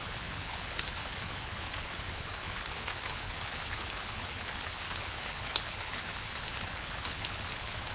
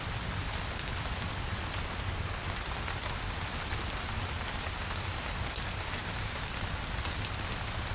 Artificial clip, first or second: first